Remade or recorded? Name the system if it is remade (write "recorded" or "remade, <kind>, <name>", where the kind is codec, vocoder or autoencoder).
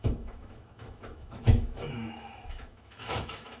remade, autoencoder, DAC-VAE